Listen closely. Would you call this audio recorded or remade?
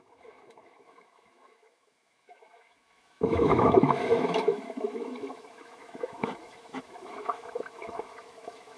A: remade